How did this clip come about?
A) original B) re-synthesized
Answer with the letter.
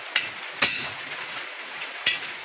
B